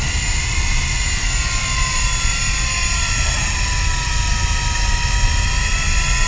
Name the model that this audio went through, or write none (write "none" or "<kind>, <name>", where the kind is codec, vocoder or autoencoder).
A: none